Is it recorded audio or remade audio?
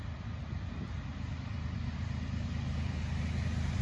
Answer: recorded